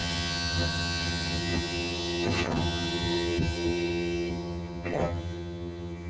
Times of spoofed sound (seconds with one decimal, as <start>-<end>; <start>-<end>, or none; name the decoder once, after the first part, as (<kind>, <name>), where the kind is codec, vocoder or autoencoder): 0.0-6.1 (vocoder, HiFi-GAN)